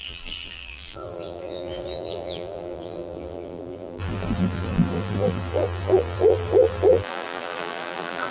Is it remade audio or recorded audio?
remade